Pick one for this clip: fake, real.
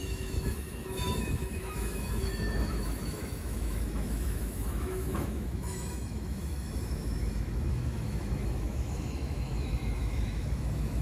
fake